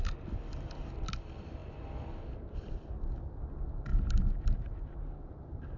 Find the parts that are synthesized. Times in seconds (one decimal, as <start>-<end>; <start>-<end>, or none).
none